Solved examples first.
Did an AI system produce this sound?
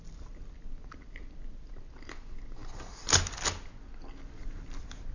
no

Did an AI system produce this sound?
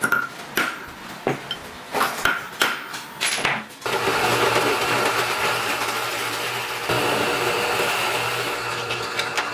no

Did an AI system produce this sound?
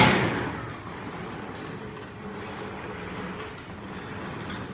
yes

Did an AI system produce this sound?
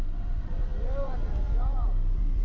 no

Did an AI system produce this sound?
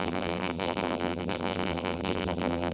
yes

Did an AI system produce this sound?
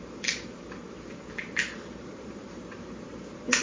yes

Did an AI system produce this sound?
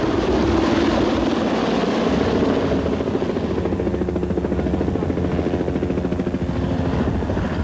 no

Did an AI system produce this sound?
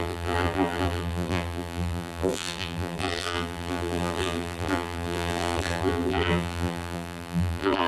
yes